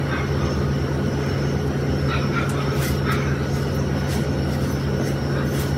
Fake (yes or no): no